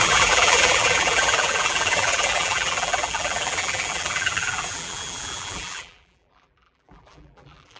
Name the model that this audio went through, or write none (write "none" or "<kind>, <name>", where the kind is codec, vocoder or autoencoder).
vocoder, BigVGAN v2